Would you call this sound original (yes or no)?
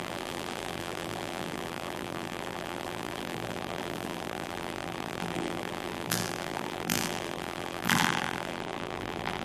no